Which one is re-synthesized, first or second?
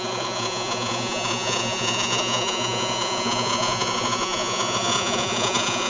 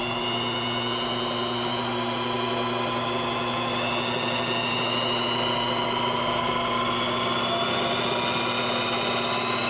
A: first